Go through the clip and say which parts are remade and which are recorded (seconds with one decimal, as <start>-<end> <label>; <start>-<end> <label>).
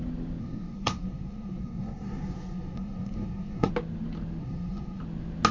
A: 0.0-0.4 recorded; 0.4-3.7 remade; 3.7-4.4 recorded; 4.4-5.0 remade; 5.0-5.5 recorded